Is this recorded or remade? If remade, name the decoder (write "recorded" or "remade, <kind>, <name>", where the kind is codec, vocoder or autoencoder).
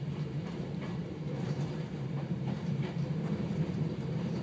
remade, vocoder, BigVGAN v2